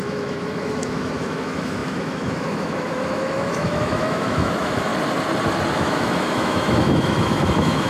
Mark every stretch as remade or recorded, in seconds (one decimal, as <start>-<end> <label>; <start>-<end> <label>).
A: 0.0-4.9 remade; 4.9-5.7 recorded; 5.7-7.9 remade